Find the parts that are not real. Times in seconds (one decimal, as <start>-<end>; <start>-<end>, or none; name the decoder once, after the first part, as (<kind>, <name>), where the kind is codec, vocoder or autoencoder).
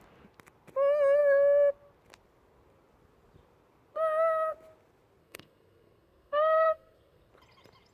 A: 5.2-7.3 (codec, SNAC)